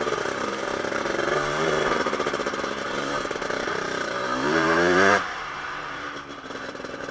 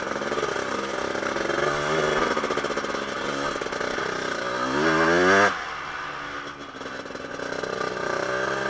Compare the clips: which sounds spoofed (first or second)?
first